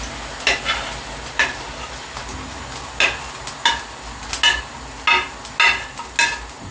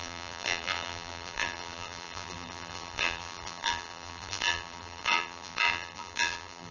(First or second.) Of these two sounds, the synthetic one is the second